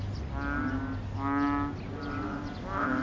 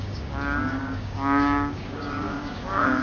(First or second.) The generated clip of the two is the second